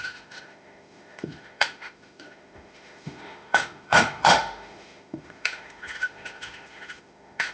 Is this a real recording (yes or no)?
no